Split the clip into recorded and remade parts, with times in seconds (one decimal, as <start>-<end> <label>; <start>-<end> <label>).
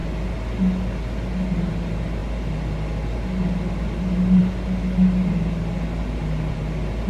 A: 0.0-7.1 recorded